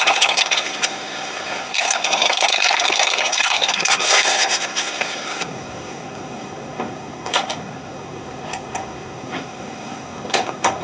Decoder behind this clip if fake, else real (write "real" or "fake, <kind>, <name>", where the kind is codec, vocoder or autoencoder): fake, codec, SNAC